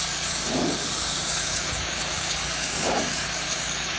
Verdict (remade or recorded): remade